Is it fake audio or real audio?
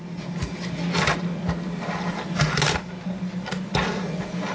real